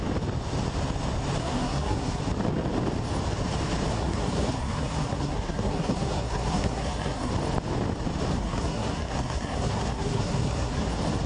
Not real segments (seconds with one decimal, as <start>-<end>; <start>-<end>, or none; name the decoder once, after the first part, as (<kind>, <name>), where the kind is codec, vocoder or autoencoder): 1.4-2.2 (codec, SNAC); 3.9-7.3; 8.3-10.9